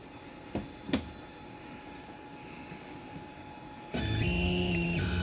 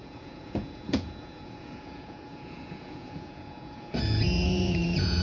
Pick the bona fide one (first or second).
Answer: first